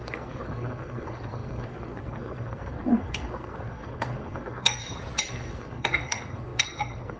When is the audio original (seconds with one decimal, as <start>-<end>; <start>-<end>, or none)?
4.8-5.3